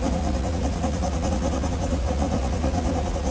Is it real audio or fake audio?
fake